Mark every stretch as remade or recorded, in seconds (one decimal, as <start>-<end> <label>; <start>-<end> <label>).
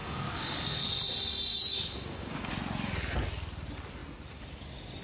0.0-0.6 remade; 0.6-1.5 recorded; 1.5-2.5 remade; 2.5-5.0 recorded